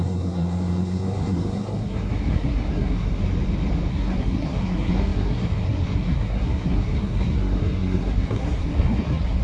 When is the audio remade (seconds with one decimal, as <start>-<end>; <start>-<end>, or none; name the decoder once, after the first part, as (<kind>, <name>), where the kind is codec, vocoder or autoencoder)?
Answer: 0.0-3.2 (codec, SNAC); 3.9-9.4